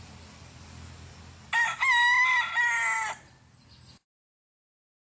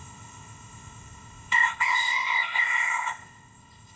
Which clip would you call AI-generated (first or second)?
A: second